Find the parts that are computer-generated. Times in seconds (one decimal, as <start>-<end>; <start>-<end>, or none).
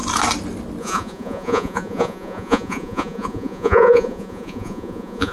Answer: 0.8-5.3